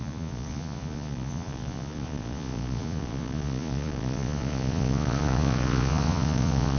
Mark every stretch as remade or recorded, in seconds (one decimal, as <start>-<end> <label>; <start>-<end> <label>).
0.0-6.8 remade